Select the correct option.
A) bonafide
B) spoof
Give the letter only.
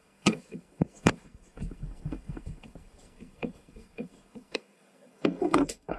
B